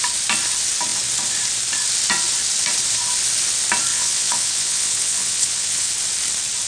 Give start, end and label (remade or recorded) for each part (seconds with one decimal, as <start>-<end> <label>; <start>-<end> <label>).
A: 0.0-3.9 recorded; 3.9-5.9 remade; 5.9-6.7 recorded